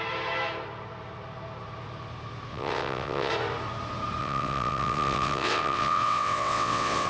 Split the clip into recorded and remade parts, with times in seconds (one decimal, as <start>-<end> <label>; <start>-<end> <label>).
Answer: 0.0-2.5 recorded; 2.5-3.3 remade; 3.3-4.2 recorded; 4.2-7.1 remade